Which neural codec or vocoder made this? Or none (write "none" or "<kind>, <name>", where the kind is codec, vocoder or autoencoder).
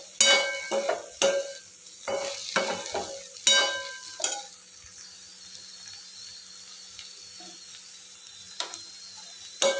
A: none